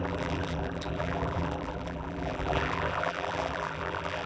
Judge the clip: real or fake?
fake